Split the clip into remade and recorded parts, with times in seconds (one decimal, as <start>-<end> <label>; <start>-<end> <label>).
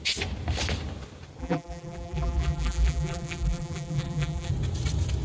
0.0-1.4 recorded; 1.4-4.5 remade; 4.5-5.2 recorded